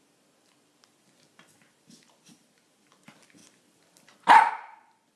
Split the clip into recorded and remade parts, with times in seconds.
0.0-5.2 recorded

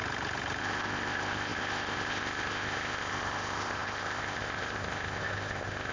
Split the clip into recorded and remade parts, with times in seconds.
0.0-0.6 recorded; 0.6-5.9 remade

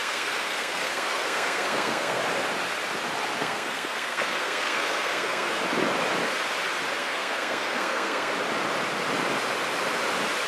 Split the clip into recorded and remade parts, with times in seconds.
0.0-2.2 remade; 2.2-3.4 recorded; 3.4-5.6 remade; 5.6-7.0 recorded; 7.0-8.3 remade; 8.3-10.5 recorded

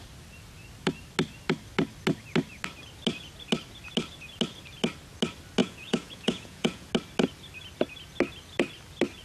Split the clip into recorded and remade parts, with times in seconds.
0.0-5.6 recorded; 5.6-6.9 remade; 6.9-9.2 recorded

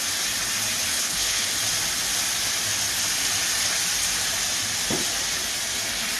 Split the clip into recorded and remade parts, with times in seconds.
0.0-0.9 recorded; 0.9-1.5 remade; 1.5-6.2 recorded

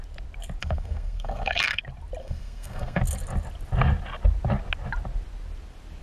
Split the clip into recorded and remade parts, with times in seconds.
0.0-0.6 recorded; 0.6-1.8 remade; 1.8-2.2 recorded; 2.2-3.0 remade; 3.0-6.0 recorded

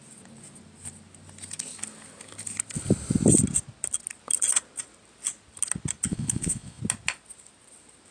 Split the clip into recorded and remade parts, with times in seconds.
0.0-6.1 recorded; 6.1-6.8 remade; 6.8-8.1 recorded

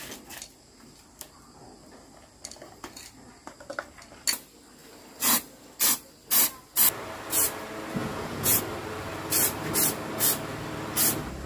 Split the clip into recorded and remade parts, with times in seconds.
0.0-8.0 recorded; 8.0-8.6 remade; 8.6-11.5 recorded